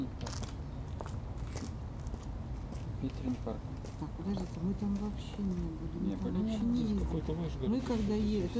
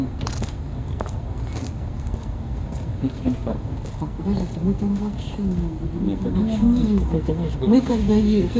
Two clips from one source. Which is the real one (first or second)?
first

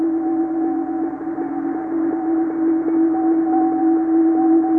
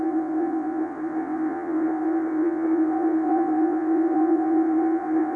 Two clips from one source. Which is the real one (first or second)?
first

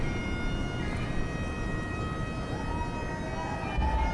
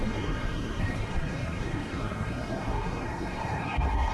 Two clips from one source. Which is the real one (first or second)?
first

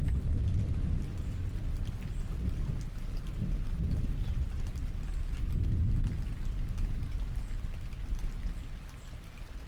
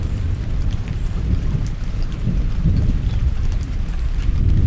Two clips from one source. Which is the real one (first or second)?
first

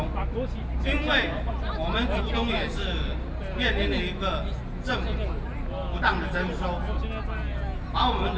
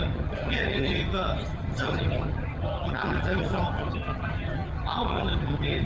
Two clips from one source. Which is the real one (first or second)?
first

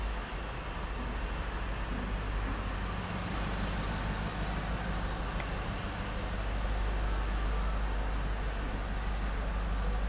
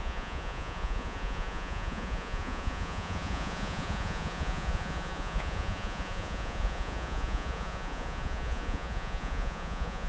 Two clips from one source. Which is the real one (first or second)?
first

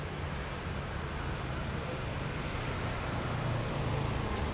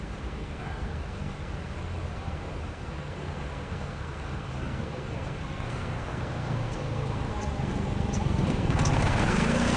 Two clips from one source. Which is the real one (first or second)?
first